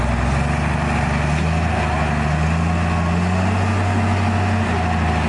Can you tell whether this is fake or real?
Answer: real